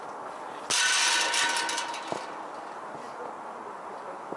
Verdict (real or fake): real